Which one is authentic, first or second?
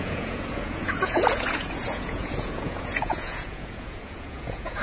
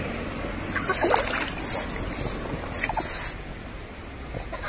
second